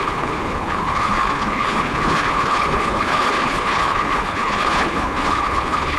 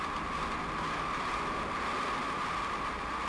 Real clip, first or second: second